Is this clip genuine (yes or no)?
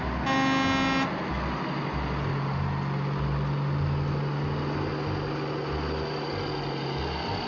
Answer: yes